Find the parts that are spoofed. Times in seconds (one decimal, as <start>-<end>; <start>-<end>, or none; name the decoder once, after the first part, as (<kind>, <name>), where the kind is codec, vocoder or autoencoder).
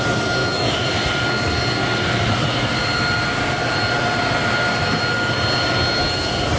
0.4-0.9 (autoencoder, DAC-VAE)